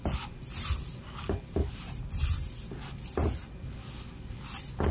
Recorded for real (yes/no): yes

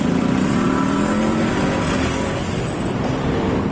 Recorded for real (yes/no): yes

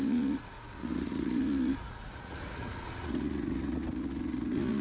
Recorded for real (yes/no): no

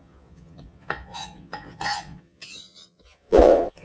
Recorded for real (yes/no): no